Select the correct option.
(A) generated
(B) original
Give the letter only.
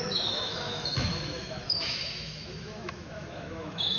A